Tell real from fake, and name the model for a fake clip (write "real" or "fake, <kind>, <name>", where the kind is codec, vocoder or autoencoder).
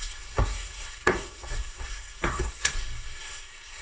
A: fake, codec, SNAC